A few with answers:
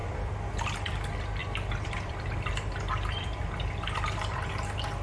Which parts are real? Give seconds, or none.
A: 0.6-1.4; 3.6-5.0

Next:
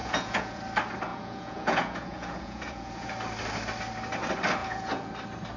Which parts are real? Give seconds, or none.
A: 0.6-1.1; 3.1-4.6; 5.1-5.6

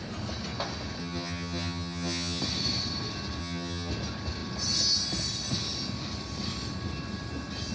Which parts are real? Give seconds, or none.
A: 0.0-1.0; 2.4-3.4; 3.9-7.7

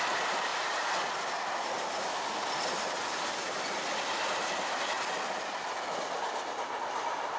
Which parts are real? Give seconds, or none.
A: 0.0-7.4

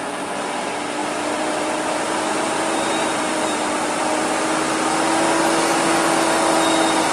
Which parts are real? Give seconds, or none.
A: 0.0-1.0; 4.0-7.1

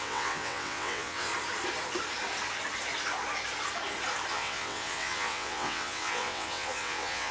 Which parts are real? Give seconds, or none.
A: 1.3-4.3